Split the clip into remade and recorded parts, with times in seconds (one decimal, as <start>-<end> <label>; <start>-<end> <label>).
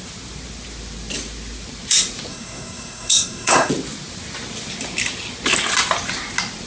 0.0-2.3 recorded; 2.3-3.7 remade; 3.7-6.7 recorded